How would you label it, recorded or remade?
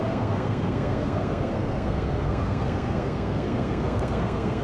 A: remade